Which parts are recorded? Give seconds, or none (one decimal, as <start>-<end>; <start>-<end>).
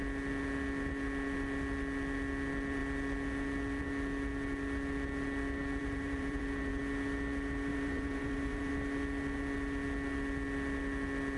0.0-5.8; 6.8-7.7; 8.7-11.4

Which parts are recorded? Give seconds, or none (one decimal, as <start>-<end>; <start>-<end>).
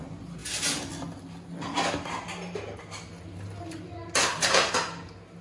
0.0-4.2; 4.7-5.4